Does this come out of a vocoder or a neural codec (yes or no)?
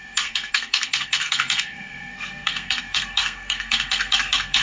yes